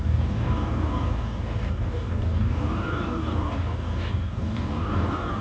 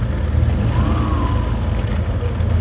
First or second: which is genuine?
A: second